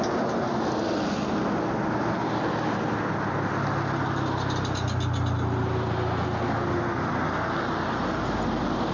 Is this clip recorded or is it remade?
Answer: recorded